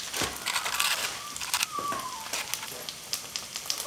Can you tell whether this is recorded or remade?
remade